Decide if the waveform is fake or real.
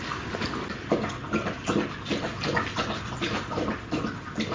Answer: real